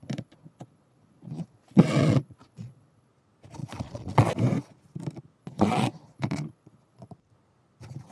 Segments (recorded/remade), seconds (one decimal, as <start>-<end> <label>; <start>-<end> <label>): 0.0-3.1 remade; 3.1-3.6 recorded; 3.6-4.3 remade; 4.3-5.4 recorded; 5.4-7.1 remade; 7.1-8.1 recorded